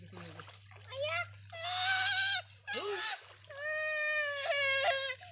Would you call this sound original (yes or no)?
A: yes